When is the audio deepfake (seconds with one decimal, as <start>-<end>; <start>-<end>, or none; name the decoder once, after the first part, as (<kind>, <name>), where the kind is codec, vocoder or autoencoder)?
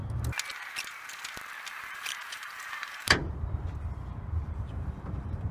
1.7-3.2 (vocoder, BigVGAN v2); 4.4-5.5